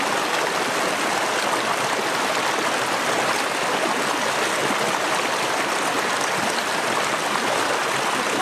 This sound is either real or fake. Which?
real